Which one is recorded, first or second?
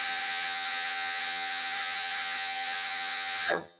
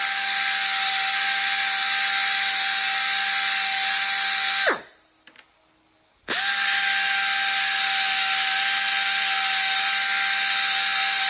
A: second